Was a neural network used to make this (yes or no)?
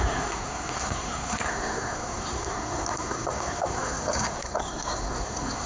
yes